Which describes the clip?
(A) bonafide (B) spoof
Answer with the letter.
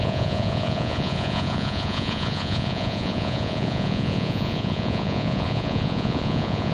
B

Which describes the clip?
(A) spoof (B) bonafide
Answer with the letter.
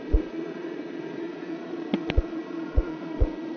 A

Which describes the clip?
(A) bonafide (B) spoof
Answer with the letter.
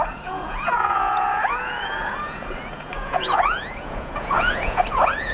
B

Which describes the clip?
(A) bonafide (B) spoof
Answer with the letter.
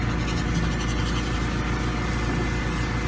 A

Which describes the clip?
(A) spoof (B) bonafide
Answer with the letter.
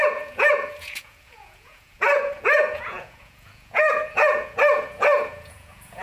A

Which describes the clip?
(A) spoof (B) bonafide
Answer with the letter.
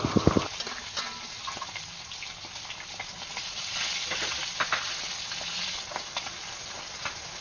B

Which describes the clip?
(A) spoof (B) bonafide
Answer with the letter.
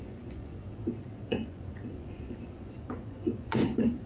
A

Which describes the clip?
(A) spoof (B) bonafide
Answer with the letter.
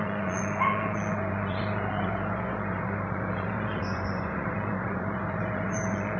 A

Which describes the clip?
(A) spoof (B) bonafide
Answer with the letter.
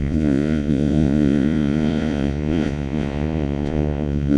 A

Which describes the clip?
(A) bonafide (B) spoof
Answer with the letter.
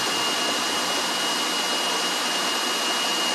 A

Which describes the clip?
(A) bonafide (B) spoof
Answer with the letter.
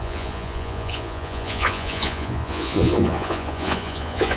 B